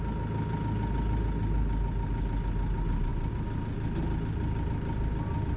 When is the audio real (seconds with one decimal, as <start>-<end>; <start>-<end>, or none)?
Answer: 0.0-5.6